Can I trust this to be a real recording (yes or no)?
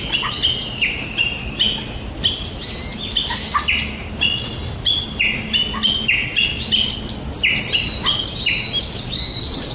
yes